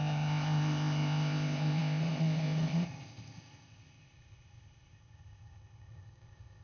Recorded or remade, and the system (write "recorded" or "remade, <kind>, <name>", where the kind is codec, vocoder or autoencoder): remade, codec, ZipCodec